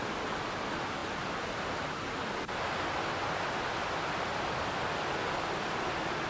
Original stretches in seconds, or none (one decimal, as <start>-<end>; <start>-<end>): 0.0-6.3